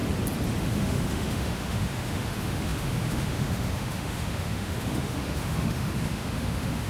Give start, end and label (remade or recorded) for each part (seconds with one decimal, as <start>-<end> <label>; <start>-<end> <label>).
0.0-0.6 recorded; 0.6-6.9 remade